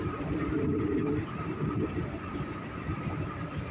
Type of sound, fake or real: real